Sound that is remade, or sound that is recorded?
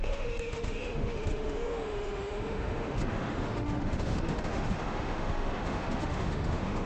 remade